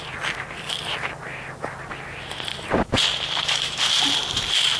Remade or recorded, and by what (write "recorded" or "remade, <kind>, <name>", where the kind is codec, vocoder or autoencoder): recorded